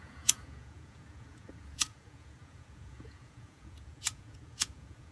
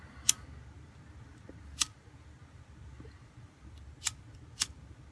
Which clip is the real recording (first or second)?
second